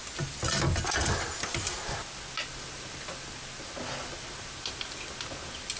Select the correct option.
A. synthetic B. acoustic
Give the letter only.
B